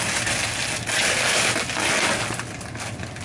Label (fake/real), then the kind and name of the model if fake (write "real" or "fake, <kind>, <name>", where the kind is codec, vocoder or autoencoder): real